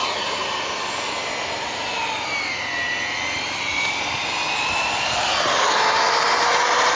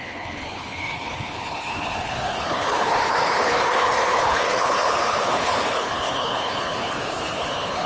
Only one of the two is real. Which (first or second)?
first